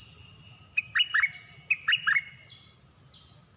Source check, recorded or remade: recorded